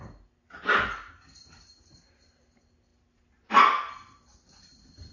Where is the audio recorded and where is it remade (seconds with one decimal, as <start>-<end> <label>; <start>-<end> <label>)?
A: 0.0-5.1 recorded